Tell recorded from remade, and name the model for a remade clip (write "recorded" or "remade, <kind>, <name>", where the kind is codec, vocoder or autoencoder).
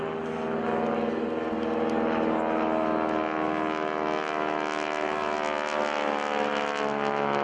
recorded